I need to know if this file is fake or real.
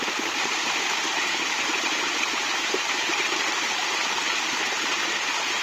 fake